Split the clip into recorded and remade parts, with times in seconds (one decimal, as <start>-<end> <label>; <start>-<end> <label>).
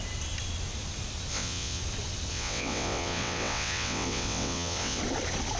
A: 0.0-1.3 recorded; 1.3-1.8 remade; 1.8-2.3 recorded; 2.3-5.0 remade; 5.0-5.6 recorded